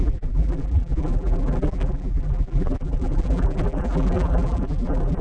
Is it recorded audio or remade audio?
remade